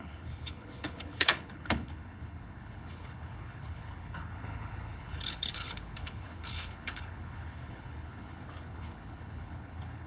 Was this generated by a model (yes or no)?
yes